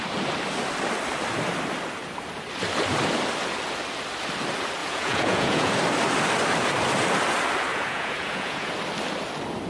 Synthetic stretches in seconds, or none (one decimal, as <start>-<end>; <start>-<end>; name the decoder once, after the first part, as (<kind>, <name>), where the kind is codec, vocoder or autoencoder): 4.8-5.7 (vocoder, Vocos); 7.7-8.7